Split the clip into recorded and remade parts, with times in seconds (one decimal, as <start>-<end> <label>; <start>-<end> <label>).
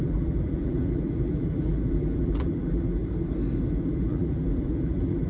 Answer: 0.0-3.0 remade; 3.0-3.7 recorded; 3.7-5.3 remade